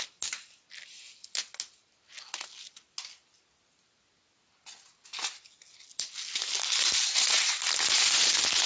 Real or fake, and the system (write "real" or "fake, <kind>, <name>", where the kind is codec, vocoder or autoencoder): real